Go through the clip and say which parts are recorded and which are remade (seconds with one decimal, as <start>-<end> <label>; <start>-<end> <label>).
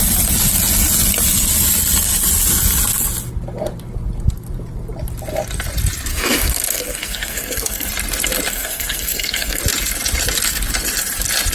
0.0-6.1 recorded; 6.1-7.9 remade; 7.9-8.5 recorded; 8.5-9.6 remade; 9.6-11.5 recorded